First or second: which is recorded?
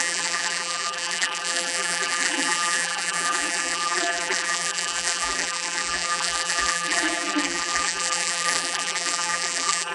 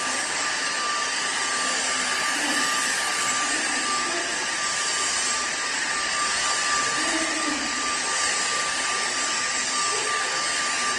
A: second